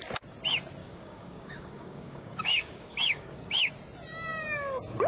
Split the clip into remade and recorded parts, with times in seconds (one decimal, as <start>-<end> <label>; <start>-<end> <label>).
0.0-0.8 recorded; 0.8-3.7 remade; 3.7-5.1 recorded